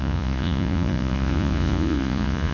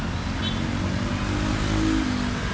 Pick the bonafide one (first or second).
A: second